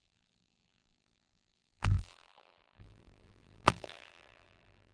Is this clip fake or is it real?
fake